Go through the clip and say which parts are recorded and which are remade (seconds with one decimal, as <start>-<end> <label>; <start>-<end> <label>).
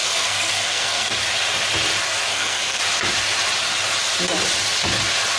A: 0.0-1.1 remade; 1.1-2.3 recorded; 2.3-2.8 remade; 2.8-5.4 recorded